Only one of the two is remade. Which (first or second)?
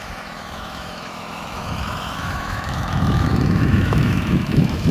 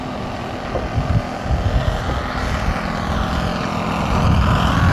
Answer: first